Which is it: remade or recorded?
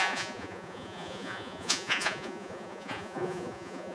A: remade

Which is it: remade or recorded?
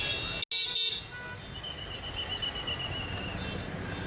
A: recorded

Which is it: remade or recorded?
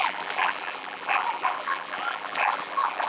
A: remade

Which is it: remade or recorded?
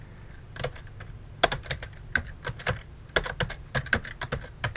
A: recorded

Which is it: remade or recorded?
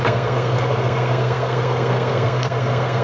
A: remade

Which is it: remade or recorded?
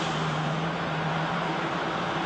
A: remade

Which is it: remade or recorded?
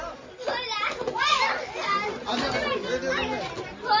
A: recorded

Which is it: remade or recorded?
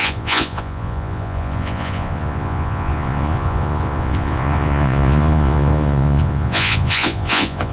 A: remade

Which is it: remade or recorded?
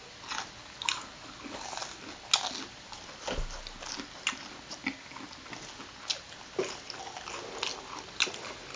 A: recorded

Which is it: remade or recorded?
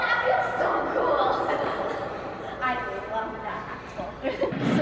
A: remade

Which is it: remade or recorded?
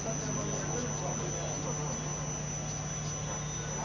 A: recorded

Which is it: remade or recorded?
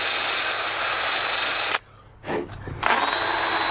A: recorded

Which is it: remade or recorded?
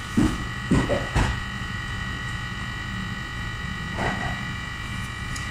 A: remade